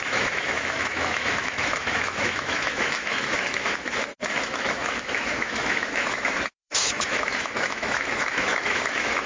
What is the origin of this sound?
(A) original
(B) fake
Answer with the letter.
B